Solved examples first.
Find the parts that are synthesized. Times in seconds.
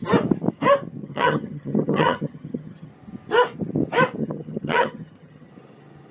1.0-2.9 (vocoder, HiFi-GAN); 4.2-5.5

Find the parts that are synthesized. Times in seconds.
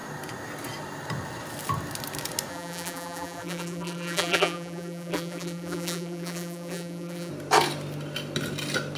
2.5-7.3 (vocoder, BigVGAN v2)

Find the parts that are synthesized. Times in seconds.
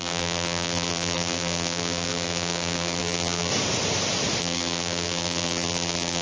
0.0-3.5 (vocoder, BigVGAN v2); 4.4-6.2